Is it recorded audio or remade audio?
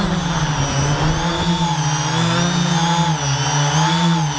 recorded